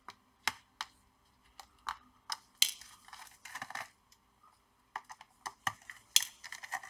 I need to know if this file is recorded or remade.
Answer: recorded